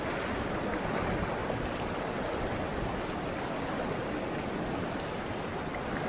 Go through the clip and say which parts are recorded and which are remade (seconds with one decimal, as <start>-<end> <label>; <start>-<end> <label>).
0.0-6.1 recorded